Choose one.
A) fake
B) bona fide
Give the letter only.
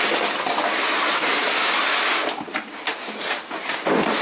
B